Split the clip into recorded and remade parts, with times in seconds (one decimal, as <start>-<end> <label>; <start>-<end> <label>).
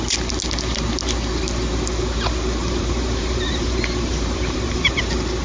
0.0-2.6 recorded; 2.6-5.0 remade; 5.0-5.4 recorded